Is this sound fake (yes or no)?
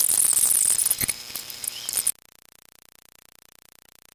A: no